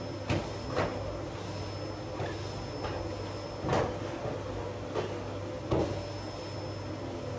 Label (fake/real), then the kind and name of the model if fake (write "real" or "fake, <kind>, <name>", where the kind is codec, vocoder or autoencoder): real